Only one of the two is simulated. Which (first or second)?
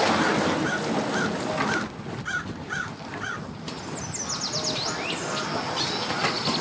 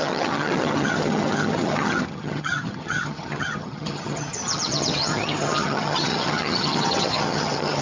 second